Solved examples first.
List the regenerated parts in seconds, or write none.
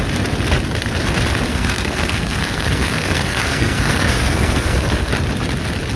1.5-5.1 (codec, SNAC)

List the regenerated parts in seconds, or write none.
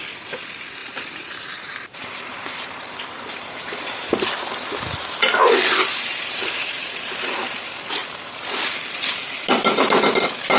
0.8-4.3 (vocoder, BigVGAN v2); 5.4-7.4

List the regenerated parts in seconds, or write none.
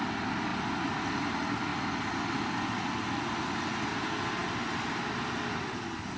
none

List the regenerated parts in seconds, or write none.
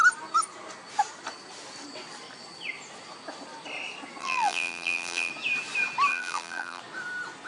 4.2-5.3 (vocoder, BigVGAN v2); 6.1-6.8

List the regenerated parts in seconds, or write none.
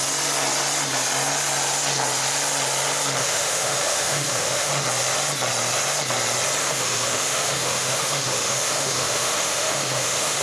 3.2-4.7 (autoencoder, DAC-VAE); 6.6-10.4